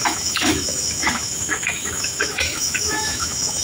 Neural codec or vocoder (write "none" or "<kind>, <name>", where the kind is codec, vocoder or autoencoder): autoencoder, DAC-VAE